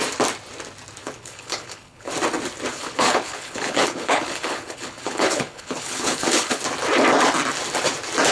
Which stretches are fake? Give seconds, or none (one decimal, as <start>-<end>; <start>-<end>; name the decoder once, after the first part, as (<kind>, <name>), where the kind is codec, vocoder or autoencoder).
1.0-2.1 (codec, HILCodec); 2.7-6.6